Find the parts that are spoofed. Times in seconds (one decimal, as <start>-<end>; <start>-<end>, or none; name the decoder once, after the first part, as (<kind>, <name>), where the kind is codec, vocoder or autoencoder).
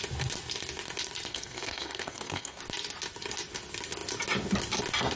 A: 1.3-2.6 (codec, SNAC)